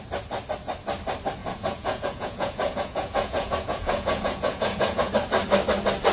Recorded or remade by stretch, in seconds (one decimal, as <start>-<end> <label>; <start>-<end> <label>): 0.0-1.4 recorded; 1.4-5.1 remade; 5.1-6.1 recorded